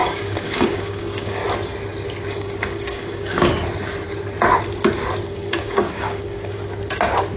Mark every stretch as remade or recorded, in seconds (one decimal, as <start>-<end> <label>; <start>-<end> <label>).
0.0-1.4 remade; 1.4-2.3 recorded; 2.3-3.5 remade; 3.5-5.3 recorded; 5.3-6.6 remade; 6.6-7.4 recorded